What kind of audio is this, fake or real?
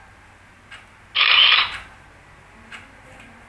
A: real